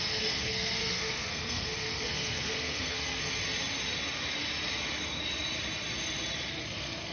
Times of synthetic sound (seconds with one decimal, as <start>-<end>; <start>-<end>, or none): 0.0-3.2; 6.5-7.1